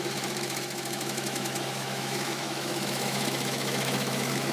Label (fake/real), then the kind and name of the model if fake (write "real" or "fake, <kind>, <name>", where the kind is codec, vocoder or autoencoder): fake, autoencoder, DAC-VAE